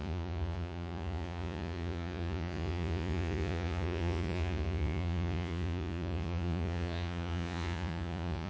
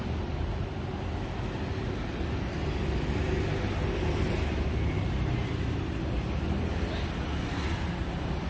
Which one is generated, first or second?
first